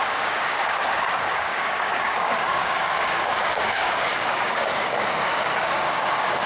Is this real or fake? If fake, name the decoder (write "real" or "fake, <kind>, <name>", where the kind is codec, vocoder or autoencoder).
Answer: fake, codec, DAC